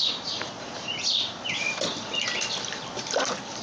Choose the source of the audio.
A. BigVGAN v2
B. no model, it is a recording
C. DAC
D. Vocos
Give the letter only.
A